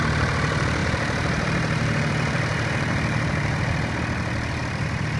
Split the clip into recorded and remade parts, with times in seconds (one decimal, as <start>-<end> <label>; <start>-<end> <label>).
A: 0.0-0.8 recorded; 0.8-3.9 remade; 3.9-4.6 recorded; 4.6-5.2 remade